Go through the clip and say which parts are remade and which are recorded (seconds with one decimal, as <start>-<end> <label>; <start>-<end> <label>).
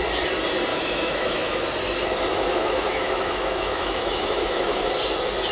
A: 0.0-0.7 recorded; 0.7-1.6 remade; 1.6-2.3 recorded; 2.3-4.9 remade; 4.9-5.5 recorded